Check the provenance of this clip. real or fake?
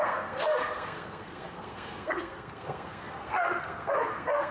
fake